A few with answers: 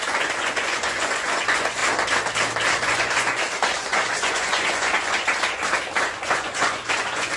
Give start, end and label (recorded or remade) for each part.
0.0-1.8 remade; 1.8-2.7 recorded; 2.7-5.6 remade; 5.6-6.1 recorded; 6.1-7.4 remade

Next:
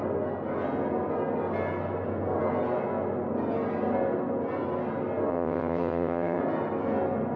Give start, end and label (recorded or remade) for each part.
0.0-5.3 recorded; 5.3-6.4 remade; 6.4-7.4 recorded

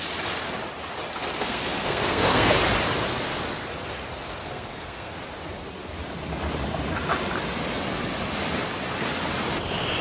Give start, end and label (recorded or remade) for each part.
0.0-1.4 recorded; 1.4-2.5 remade; 2.5-4.4 recorded; 4.4-5.2 remade; 5.2-10.0 recorded

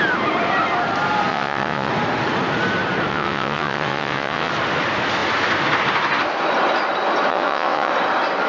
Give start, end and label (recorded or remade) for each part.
0.0-1.3 recorded; 1.3-1.9 remade; 1.9-3.1 recorded; 3.1-4.5 remade; 4.5-7.3 recorded; 7.3-7.9 remade; 7.9-8.5 recorded

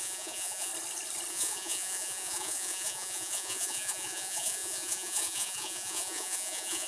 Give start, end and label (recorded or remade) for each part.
0.0-0.7 remade; 0.7-1.3 recorded; 1.3-6.9 remade

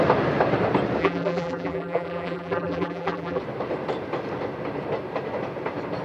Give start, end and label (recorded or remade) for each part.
0.0-1.0 recorded; 1.0-3.4 remade; 3.4-6.0 recorded